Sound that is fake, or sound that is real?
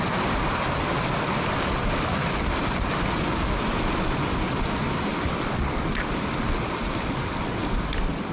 real